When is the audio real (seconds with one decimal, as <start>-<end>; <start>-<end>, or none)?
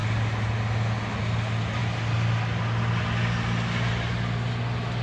1.2-1.8; 3.9-5.0